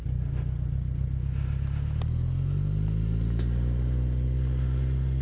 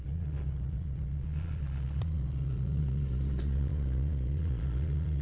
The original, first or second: first